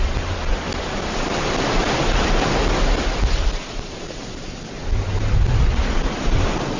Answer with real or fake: real